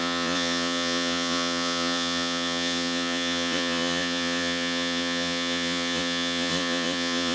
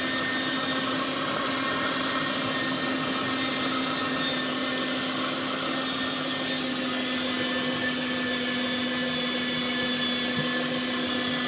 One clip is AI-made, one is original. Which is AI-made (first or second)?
first